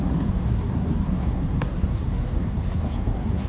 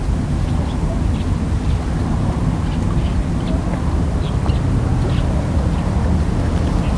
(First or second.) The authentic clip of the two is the second